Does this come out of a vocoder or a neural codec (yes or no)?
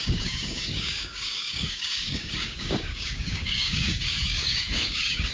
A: yes